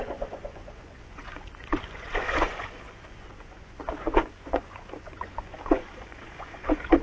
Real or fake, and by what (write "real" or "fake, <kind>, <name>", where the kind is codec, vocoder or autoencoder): fake, vocoder, Vocos